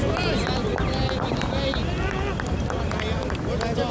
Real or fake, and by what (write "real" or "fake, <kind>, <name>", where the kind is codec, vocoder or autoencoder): real